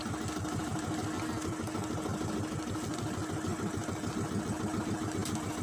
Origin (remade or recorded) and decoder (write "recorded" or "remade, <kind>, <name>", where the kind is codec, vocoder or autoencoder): recorded